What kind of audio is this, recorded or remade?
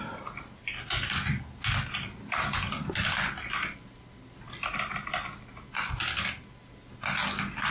recorded